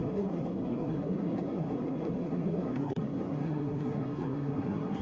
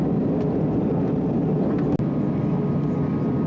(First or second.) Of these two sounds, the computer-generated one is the first